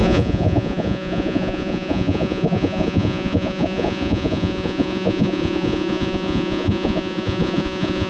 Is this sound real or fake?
fake